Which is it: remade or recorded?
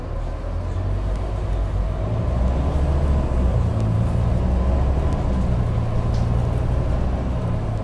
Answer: recorded